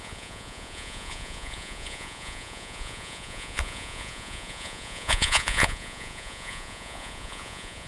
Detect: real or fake fake